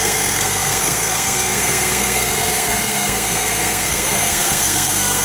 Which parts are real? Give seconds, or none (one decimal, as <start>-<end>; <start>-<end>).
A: none